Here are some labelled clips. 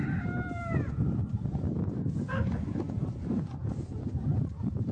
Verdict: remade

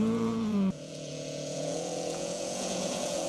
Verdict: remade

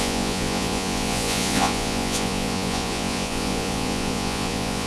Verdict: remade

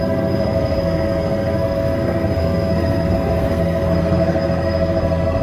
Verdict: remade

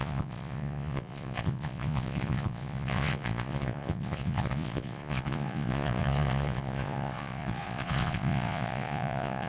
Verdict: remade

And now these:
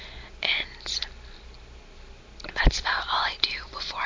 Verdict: recorded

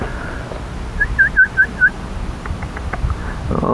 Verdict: recorded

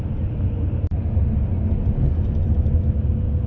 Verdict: recorded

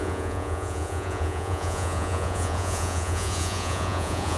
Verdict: remade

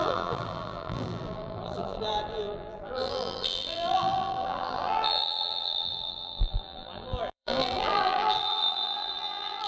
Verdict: remade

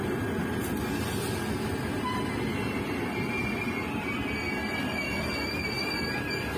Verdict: recorded